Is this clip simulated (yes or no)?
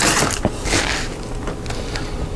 no